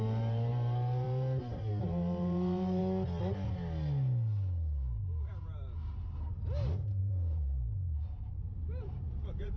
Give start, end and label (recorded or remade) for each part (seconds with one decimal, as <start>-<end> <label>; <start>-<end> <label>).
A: 0.0-2.8 remade; 2.8-7.0 recorded; 7.0-9.6 remade